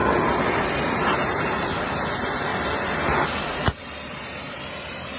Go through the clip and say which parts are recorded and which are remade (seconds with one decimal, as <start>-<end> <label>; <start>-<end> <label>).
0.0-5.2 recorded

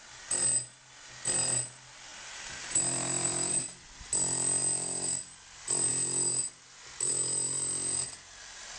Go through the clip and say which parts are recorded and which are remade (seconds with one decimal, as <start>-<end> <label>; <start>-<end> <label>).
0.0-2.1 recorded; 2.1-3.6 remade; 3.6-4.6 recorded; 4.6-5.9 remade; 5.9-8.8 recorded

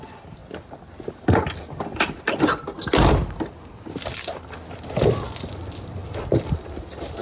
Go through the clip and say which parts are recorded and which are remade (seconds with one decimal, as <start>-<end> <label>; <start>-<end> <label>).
0.0-7.2 remade

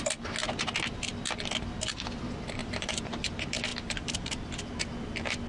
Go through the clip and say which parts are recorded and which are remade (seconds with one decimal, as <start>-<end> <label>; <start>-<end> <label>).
0.0-2.6 recorded; 2.6-3.3 remade; 3.3-3.7 recorded; 3.7-4.5 remade; 4.5-5.5 recorded

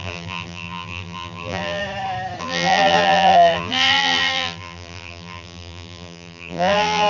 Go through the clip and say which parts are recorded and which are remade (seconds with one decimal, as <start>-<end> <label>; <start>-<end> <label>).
0.0-1.8 remade; 1.8-2.4 recorded; 2.4-7.1 remade